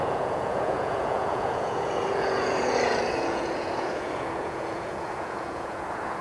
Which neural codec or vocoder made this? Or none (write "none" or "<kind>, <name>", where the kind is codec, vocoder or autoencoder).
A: vocoder, Vocos